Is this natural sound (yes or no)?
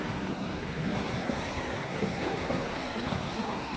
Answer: no